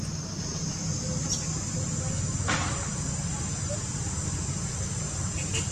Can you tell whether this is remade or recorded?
recorded